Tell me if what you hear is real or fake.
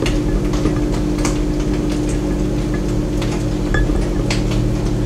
real